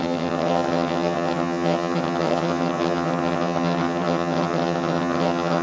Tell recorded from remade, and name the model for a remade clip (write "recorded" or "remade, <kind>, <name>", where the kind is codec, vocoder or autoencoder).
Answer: remade, vocoder, HiFi-GAN